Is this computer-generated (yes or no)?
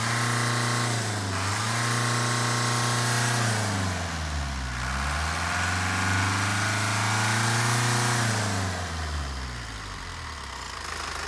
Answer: no